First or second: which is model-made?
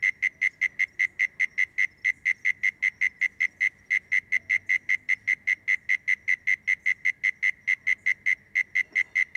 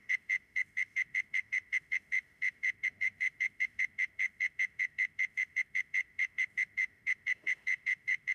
second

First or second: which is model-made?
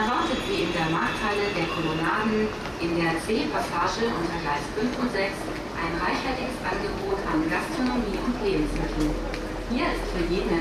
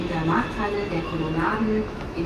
second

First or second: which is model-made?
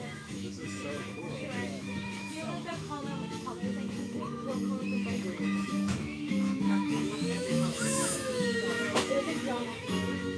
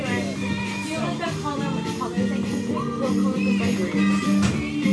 first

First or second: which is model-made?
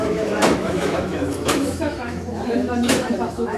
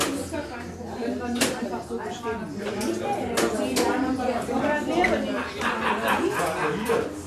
first